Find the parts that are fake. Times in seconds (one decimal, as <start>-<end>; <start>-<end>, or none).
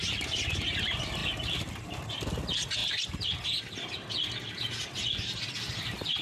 none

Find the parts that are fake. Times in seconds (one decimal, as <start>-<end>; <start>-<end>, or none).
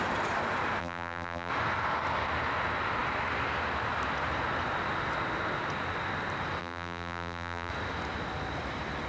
0.8-1.5; 6.6-7.7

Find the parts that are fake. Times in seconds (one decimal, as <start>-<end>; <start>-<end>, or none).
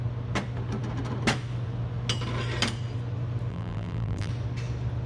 3.5-4.3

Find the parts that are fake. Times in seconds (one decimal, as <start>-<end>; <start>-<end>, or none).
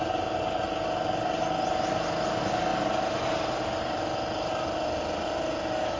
2.7-5.5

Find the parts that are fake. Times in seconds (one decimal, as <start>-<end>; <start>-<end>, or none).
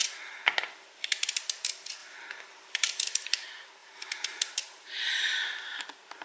2.0-3.0; 3.8-5.8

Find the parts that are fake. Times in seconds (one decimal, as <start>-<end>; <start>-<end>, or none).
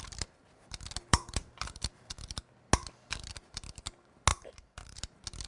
1.1-2.4; 4.3-5.0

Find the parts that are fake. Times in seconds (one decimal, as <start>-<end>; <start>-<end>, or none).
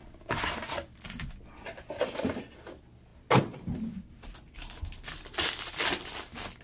none